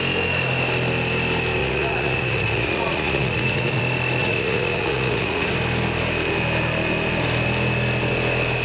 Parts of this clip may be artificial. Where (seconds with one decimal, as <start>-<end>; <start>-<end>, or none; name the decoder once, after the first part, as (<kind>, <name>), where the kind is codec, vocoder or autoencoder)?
1.6-3.8 (vocoder, Vocos); 4.2-5.5